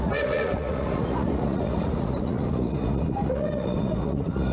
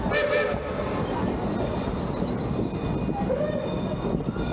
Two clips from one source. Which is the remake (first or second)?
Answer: first